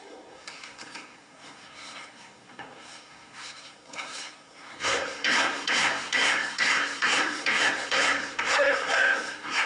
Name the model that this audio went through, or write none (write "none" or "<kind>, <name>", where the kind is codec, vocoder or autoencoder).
codec, SNAC